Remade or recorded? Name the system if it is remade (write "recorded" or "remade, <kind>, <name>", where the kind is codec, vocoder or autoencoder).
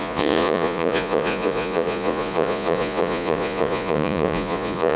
remade, vocoder, Vocos